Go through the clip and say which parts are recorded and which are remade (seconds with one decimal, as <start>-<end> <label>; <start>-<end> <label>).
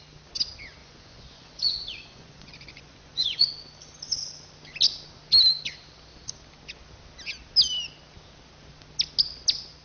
0.0-0.8 recorded; 0.8-3.5 remade; 3.5-9.8 recorded